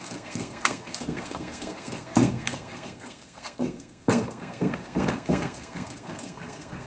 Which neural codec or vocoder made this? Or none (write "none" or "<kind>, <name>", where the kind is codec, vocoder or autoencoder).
codec, SNAC